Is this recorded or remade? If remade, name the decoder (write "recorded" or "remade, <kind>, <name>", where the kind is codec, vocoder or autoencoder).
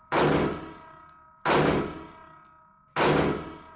recorded